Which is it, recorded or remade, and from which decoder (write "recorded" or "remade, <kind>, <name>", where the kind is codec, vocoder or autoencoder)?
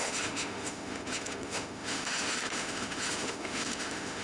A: remade, autoencoder, DAC-VAE